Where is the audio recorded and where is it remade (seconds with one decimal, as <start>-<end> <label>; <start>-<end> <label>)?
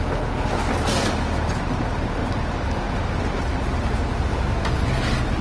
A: 0.0-2.2 recorded; 2.2-3.5 remade; 3.5-5.4 recorded